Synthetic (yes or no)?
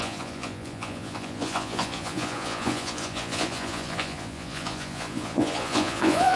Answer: yes